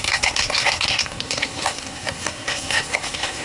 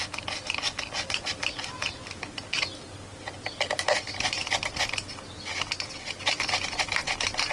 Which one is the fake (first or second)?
first